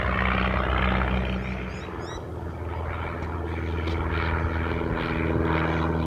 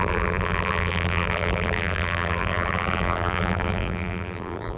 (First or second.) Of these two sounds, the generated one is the second